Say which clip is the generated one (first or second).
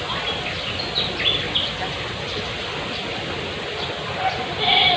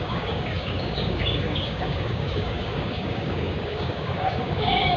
second